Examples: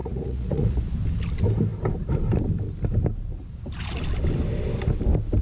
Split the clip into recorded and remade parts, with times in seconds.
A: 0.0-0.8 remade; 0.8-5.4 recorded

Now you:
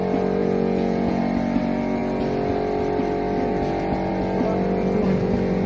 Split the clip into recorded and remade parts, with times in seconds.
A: 0.0-0.4 recorded; 0.4-1.2 remade; 1.2-5.7 recorded

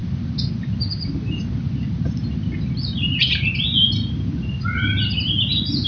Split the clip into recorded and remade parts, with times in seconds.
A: 0.0-5.9 recorded

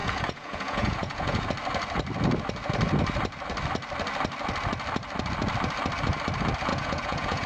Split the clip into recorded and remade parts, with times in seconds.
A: 0.0-1.5 remade; 1.5-6.7 recorded; 6.7-7.5 remade

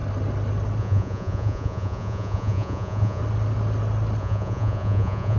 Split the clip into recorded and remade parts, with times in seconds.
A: 0.0-0.8 recorded; 0.8-3.2 remade; 3.2-4.2 recorded; 4.2-5.4 remade

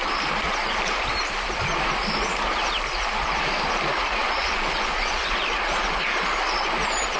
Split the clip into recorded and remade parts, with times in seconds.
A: 0.0-4.2 recorded; 4.2-5.3 remade; 5.3-7.2 recorded